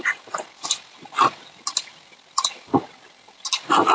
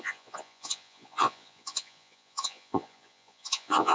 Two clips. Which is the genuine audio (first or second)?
first